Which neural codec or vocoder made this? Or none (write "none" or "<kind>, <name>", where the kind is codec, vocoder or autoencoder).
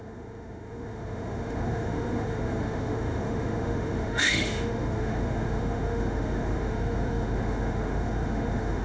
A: autoencoder, DAC-VAE